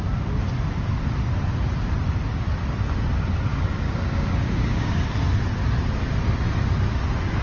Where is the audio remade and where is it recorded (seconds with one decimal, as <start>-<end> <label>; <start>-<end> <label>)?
0.0-3.5 recorded; 3.5-5.0 remade; 5.0-7.4 recorded